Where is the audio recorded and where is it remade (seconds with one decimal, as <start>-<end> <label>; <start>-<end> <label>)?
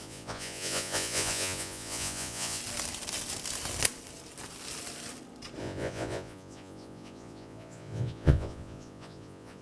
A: 0.0-2.6 remade; 2.6-5.6 recorded; 5.6-9.6 remade